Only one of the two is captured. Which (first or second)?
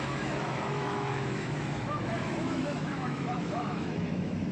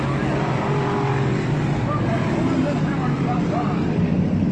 second